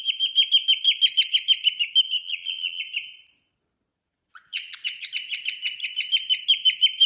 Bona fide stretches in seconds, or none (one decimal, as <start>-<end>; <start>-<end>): 0.0-2.2; 2.8-3.9; 5.1-7.1